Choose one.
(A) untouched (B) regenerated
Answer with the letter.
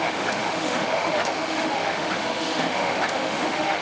B